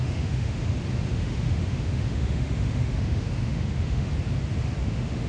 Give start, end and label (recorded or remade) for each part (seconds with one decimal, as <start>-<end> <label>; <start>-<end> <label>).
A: 0.0-0.6 remade; 0.6-1.1 recorded; 1.1-4.1 remade; 4.1-4.8 recorded; 4.8-5.3 remade